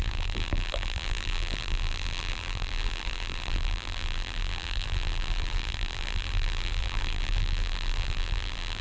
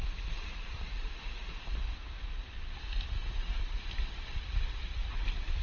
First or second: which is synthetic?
first